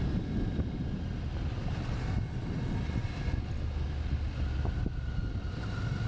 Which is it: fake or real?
real